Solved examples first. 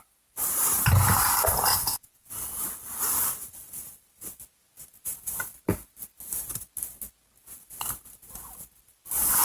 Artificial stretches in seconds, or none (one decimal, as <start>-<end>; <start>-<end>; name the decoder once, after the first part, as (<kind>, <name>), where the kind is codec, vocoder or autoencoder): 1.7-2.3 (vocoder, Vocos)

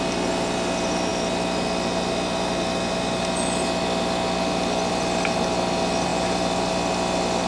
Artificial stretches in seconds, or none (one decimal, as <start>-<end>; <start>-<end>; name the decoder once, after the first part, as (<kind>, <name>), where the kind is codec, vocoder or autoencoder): 6.1-6.7 (vocoder, BigVGAN v2)

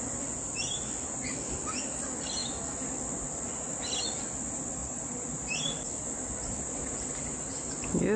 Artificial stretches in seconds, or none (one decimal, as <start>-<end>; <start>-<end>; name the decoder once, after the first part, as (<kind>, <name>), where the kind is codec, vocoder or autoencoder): 4.8-5.6 (vocoder, Vocos)